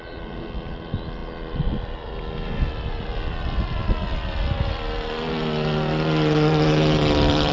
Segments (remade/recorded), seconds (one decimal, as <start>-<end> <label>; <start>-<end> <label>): 0.0-7.5 recorded